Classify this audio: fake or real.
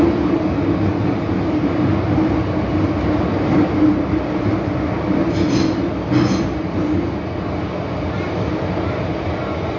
real